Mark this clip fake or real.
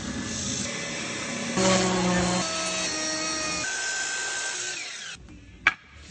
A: real